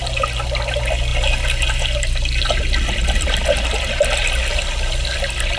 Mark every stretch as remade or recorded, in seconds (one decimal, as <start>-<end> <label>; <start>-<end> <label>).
0.0-5.6 recorded